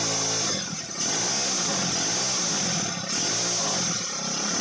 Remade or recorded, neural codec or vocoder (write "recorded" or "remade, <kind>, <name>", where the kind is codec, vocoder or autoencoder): recorded